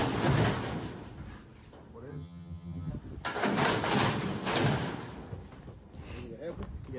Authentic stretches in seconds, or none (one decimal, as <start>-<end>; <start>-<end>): 0.0-2.1; 2.9-7.0